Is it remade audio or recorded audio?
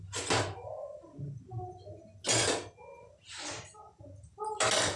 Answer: recorded